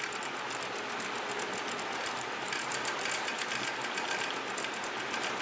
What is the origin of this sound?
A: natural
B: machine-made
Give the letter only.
A